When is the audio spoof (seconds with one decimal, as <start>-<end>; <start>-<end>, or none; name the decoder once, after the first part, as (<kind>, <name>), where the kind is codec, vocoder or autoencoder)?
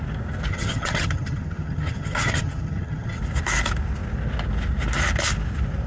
0.5-3.2 (vocoder, HiFi-GAN)